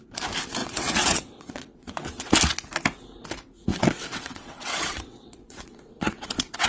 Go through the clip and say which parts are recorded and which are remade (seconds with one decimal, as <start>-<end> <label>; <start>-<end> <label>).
0.0-0.6 recorded; 0.6-2.3 remade; 2.3-3.7 recorded; 3.7-6.7 remade